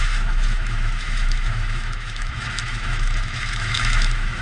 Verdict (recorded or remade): remade